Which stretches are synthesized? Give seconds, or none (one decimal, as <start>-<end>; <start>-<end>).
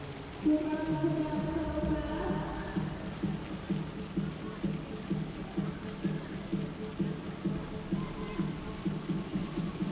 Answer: 9.3-9.9